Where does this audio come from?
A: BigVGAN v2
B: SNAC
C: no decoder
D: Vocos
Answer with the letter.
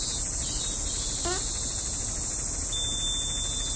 C